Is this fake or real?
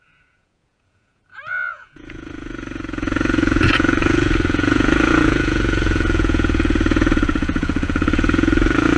fake